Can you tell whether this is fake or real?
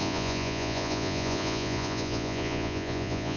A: fake